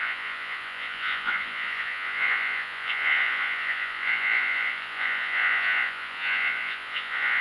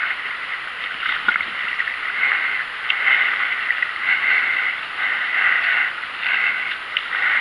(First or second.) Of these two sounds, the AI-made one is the first